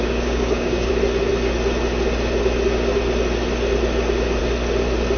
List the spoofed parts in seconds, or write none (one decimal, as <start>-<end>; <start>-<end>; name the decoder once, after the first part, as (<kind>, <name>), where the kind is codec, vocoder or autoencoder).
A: 0.0-0.9 (codec, DAC)